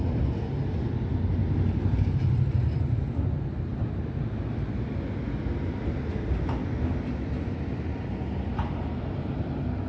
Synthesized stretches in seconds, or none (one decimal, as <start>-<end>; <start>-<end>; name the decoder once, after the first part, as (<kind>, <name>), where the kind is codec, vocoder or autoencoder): none